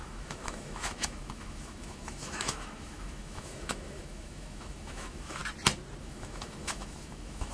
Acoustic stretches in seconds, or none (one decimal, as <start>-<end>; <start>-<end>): 5.4-6.0